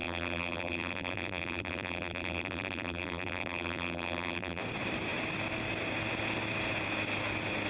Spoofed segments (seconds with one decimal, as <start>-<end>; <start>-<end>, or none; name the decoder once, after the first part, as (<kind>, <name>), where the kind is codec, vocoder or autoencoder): 0.0-4.6 (vocoder, BigVGAN v2)